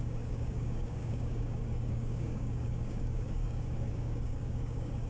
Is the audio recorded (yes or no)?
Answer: no